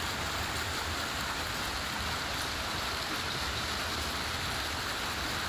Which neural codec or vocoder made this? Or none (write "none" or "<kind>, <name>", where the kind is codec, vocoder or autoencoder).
none